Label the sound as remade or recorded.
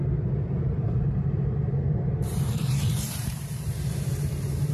remade